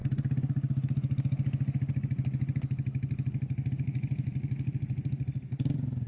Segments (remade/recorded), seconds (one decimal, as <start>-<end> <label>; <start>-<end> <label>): 0.0-6.1 recorded